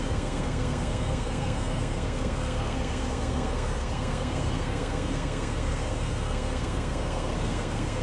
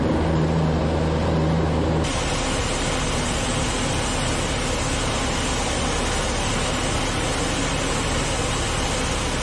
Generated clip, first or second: first